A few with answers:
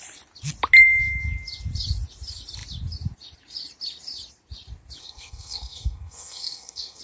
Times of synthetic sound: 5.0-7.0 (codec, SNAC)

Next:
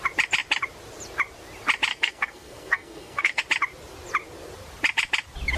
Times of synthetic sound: 1.9-3.4 (codec, SNAC)

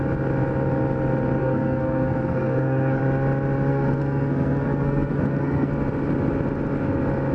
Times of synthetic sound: 1.4-3.0 (codec, SNAC); 3.7-5.7

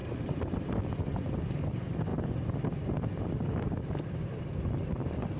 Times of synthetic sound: none

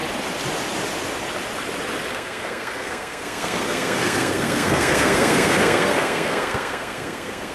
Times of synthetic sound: 2.1-7.5 (codec, SNAC)

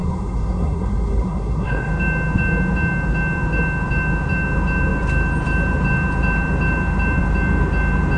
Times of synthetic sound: 0.0-1.9 (codec, SNAC)